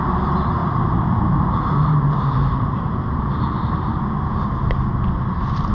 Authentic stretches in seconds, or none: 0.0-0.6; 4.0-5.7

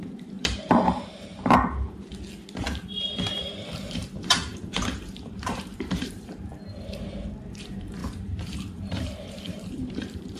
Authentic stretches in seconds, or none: 2.1-3.4; 6.5-7.3

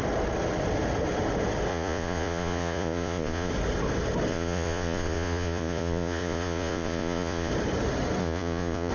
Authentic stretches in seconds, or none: 0.0-1.7; 3.5-4.3; 7.5-8.2

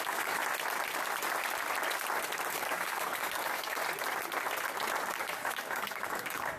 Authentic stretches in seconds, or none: 0.4-2.5; 3.8-5.2

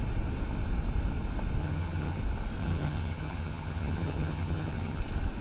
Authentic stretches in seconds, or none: 0.0-1.6; 2.2-2.6; 5.0-5.4

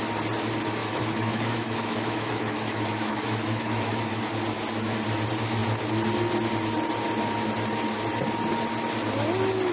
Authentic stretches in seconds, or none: 0.0-0.8; 4.2-9.7

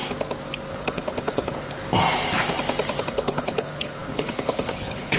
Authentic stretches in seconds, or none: 0.0-0.7; 1.8-3.0